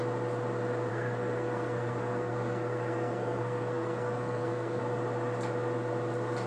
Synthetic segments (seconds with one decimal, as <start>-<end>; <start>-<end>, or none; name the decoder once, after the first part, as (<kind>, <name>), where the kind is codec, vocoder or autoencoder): 0.9-4.8 (codec, SNAC)